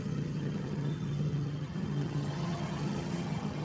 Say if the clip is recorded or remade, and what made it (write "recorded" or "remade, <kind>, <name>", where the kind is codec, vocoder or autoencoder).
remade, vocoder, HiFi-GAN